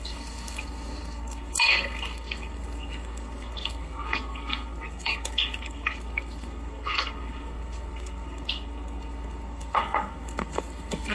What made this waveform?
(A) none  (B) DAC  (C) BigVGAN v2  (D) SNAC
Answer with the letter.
D